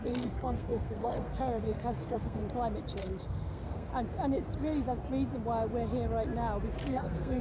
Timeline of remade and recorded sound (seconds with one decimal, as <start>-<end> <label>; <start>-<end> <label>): 0.0-2.4 remade; 2.4-3.0 recorded; 3.0-3.9 remade; 3.9-6.9 recorded; 6.9-7.4 remade